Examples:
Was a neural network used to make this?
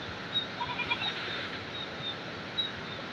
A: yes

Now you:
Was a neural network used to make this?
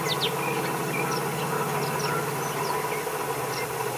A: no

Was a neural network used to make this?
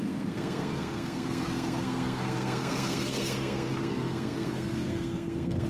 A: yes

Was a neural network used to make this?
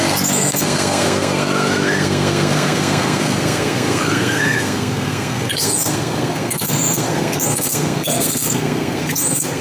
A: yes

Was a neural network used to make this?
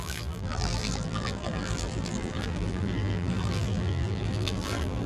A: yes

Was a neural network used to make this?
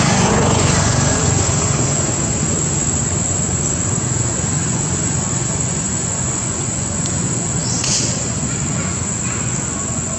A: yes